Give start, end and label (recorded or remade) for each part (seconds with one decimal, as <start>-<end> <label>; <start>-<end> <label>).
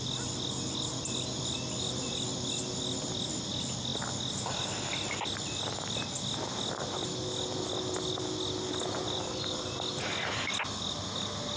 0.0-11.6 recorded